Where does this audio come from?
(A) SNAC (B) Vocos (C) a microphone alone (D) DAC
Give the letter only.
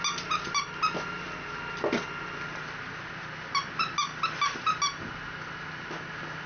C